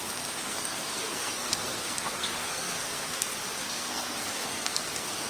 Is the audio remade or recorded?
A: remade